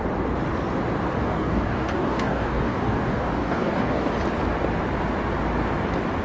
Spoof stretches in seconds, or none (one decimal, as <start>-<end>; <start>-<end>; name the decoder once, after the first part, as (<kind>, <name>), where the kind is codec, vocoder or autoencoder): 1.2-4.1 (codec, DAC)